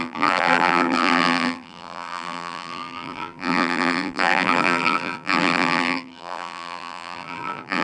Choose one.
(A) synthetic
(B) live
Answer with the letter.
A